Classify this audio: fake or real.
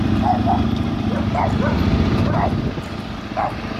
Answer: fake